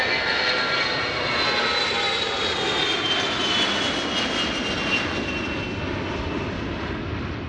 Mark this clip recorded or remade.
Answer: recorded